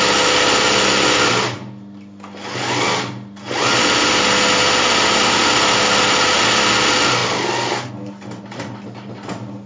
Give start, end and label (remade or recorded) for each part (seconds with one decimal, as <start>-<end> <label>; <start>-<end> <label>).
0.0-9.7 recorded